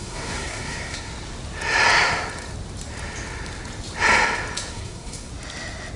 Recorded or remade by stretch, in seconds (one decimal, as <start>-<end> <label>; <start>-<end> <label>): 0.0-1.1 remade; 1.1-4.7 recorded; 4.7-5.3 remade; 5.3-6.0 recorded